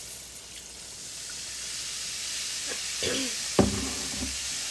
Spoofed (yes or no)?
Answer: no